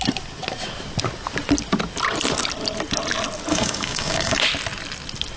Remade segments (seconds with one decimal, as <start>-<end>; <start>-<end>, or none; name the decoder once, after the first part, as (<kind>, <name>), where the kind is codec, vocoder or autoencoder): 3.5-4.4 (codec, DAC)